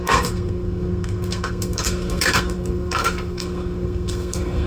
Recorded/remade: remade